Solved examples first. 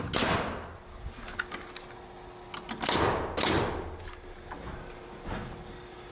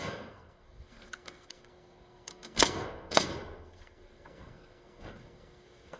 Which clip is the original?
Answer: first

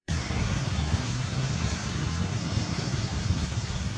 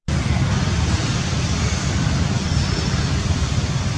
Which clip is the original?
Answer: second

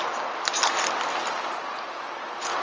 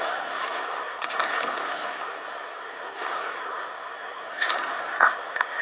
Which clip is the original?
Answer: first